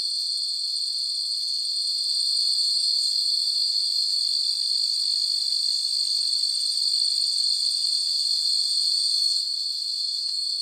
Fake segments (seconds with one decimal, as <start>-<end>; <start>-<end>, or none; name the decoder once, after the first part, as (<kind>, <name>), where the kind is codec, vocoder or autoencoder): 2.6-4.2 (autoencoder, DAC-VAE); 8.9-10.6